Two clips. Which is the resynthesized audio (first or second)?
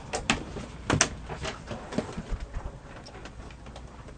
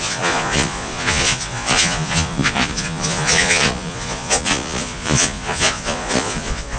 second